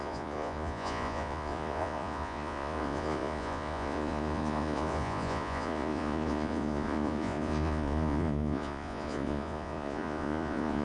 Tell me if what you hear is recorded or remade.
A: remade